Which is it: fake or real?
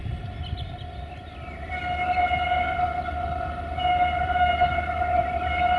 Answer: real